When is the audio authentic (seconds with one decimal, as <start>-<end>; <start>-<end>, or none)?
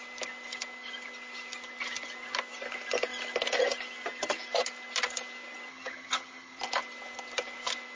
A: 0.0-5.7; 6.6-8.0